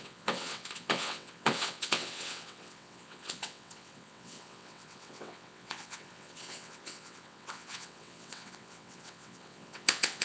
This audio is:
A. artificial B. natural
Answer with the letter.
A